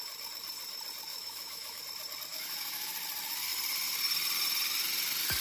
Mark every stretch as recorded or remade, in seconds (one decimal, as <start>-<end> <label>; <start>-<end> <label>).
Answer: 0.0-1.1 recorded; 1.1-1.8 remade; 1.8-2.3 recorded; 2.3-2.9 remade; 2.9-5.4 recorded